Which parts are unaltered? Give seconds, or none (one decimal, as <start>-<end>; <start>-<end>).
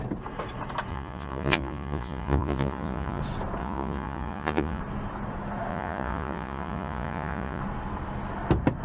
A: 0.0-0.9; 3.2-3.6; 4.8-5.7; 7.6-8.8